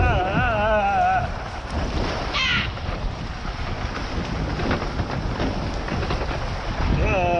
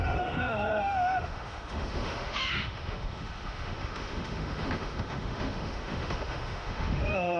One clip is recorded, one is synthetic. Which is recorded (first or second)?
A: first